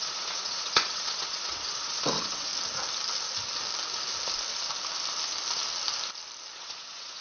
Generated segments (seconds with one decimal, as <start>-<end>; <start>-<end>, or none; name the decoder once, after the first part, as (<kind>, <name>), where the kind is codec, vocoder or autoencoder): 0.0-2.5 (vocoder, WaveNeXt); 6.6-7.2